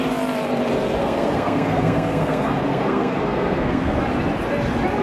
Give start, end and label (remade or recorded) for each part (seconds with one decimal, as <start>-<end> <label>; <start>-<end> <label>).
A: 0.0-1.0 recorded; 1.0-4.0 remade; 4.0-5.0 recorded